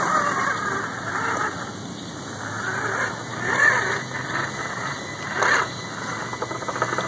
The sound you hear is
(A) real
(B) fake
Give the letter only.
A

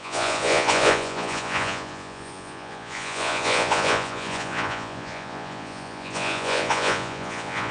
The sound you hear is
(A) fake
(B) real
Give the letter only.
A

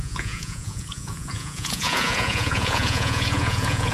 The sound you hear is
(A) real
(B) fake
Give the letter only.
B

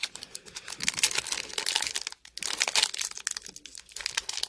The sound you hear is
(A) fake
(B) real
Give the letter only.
B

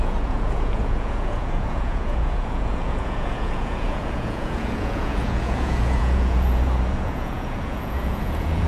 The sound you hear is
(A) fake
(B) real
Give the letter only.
A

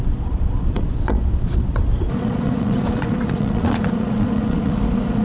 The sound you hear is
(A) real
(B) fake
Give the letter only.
B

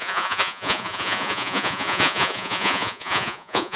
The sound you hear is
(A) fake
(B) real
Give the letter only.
A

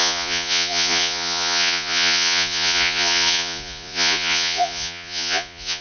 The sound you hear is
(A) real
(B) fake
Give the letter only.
B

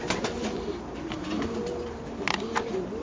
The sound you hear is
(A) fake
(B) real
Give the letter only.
B